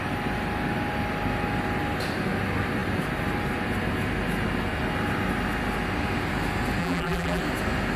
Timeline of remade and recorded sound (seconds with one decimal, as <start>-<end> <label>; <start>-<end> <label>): 0.0-6.8 recorded; 6.8-7.4 remade; 7.4-8.0 recorded